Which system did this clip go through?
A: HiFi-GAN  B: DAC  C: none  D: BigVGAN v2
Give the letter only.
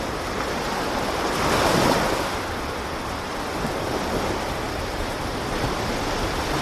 D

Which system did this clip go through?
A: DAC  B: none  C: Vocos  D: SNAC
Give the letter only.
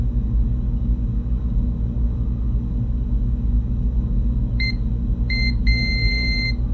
A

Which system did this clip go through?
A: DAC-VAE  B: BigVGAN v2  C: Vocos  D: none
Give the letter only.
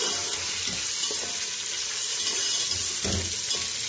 D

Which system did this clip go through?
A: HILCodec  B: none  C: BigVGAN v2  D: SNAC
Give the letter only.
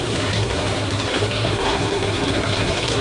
D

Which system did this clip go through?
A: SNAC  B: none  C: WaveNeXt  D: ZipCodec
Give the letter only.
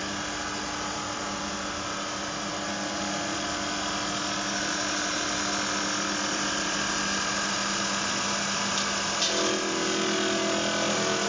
B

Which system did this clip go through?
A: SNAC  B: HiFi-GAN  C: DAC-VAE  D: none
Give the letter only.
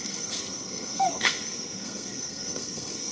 A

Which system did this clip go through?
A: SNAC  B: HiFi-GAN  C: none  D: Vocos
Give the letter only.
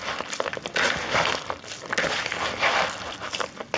C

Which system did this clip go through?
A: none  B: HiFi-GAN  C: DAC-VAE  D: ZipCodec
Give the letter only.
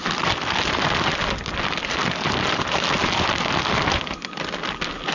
A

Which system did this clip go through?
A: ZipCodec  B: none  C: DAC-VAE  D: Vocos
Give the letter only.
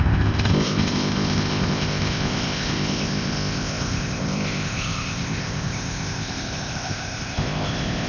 A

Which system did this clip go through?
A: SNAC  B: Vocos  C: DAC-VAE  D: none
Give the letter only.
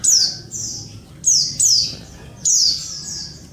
D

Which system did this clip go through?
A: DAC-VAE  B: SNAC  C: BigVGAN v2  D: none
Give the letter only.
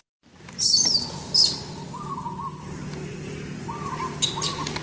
D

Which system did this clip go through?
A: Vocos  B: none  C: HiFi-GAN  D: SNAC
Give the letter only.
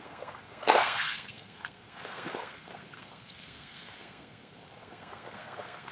D